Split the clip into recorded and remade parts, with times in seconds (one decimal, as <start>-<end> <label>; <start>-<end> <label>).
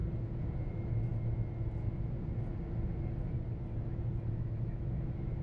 0.0-0.7 recorded; 0.7-1.1 remade; 1.1-4.3 recorded; 4.3-5.4 remade